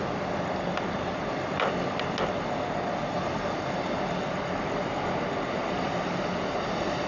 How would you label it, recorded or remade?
recorded